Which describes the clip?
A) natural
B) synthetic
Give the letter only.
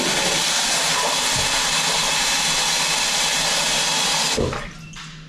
A